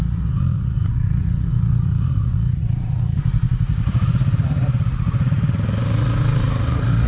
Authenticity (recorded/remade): remade